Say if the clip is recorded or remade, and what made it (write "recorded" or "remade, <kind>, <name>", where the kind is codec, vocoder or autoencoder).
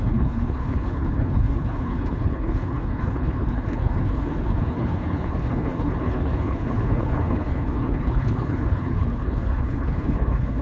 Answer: remade, codec, HILCodec